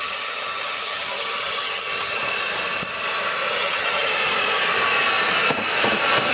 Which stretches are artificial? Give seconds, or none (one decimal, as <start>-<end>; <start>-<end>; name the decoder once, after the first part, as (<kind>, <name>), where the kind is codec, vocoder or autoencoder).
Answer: 0.0-2.2 (vocoder, HiFi-GAN); 3.5-4.1